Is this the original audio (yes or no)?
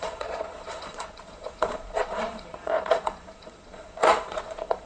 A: no